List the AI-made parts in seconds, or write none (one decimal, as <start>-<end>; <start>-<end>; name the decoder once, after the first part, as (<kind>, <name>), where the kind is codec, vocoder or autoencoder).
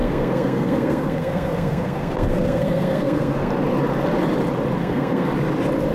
0.0-3.5 (codec, SNAC); 4.8-5.3